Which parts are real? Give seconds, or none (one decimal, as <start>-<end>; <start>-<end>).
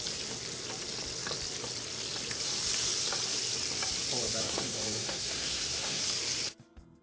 0.0-4.4; 6.0-7.0